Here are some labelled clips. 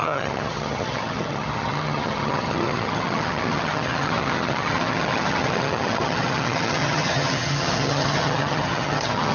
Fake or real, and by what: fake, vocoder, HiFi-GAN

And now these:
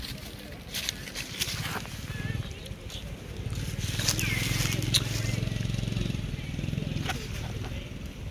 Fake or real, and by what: real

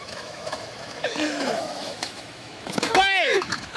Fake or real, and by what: fake, autoencoder, DAC-VAE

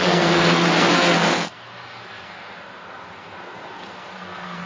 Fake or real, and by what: fake, codec, SNAC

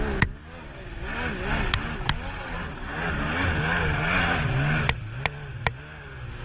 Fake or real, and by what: real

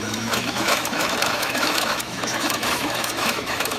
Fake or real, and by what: fake, autoencoder, DAC-VAE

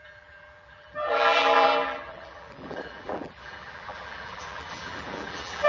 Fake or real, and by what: fake, vocoder, BigVGAN v2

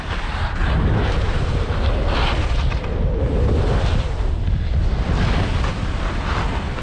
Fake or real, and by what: real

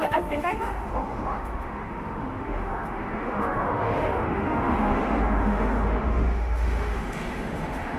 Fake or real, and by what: fake, autoencoder, DAC-VAE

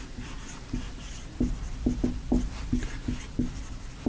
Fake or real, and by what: real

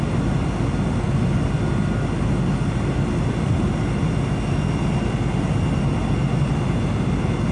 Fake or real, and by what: real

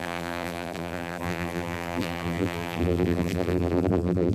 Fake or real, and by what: fake, vocoder, BigVGAN v2